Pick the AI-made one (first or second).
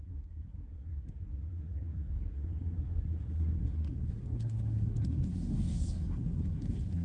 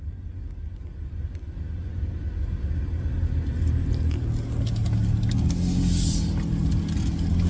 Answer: first